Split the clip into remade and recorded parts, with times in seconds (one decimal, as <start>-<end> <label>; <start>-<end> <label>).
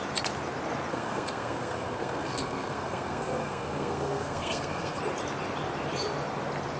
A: 0.0-0.9 recorded; 0.9-5.0 remade; 5.0-6.8 recorded